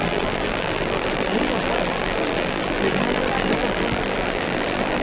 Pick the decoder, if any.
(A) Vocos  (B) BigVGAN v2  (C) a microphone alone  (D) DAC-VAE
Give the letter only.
B